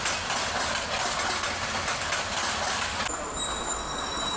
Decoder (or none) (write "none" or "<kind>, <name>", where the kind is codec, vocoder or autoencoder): none